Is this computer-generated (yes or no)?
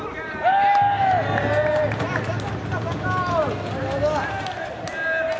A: no